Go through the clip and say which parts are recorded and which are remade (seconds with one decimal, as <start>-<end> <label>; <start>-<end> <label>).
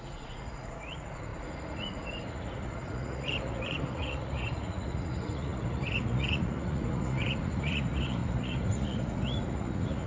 0.0-10.1 remade